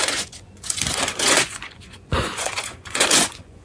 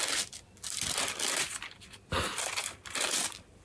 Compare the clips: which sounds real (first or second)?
second